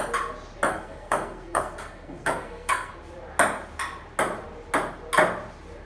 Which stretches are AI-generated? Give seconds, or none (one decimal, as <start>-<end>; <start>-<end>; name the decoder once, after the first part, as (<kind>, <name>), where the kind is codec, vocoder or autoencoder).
0.7-2.9 (codec, SNAC)